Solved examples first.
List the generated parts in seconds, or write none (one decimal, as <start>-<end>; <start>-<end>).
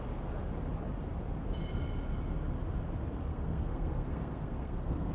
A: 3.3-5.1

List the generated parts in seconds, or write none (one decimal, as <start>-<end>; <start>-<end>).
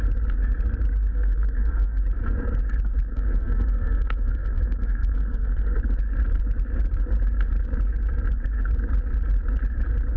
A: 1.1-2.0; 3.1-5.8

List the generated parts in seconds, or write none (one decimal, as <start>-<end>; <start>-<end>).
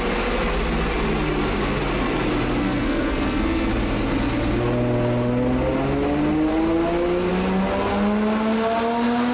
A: 2.6-3.7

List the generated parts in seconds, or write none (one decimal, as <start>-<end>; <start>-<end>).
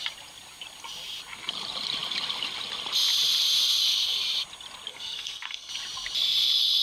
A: 4.9-5.7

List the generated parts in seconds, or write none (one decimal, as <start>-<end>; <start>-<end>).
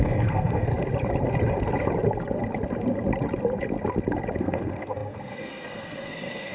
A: 0.0-0.7; 4.4-6.5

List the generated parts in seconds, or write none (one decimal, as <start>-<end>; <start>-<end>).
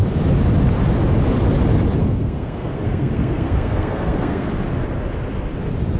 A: 2.0-4.5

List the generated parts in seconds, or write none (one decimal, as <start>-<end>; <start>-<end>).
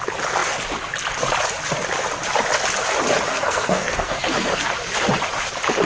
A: 3.3-4.7